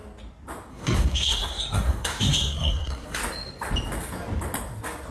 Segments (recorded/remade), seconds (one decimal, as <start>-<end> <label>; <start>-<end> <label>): 0.0-0.7 recorded; 0.7-3.2 remade; 3.2-5.1 recorded

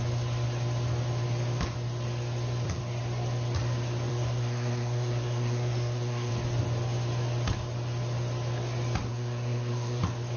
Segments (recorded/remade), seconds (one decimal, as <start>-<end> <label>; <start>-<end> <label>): 0.0-4.1 recorded; 4.1-6.3 remade; 6.3-9.1 recorded; 9.1-10.0 remade; 10.0-10.4 recorded